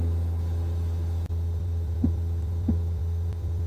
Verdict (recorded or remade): recorded